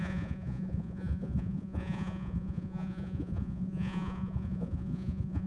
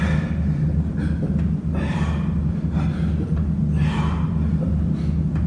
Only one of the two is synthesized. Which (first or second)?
first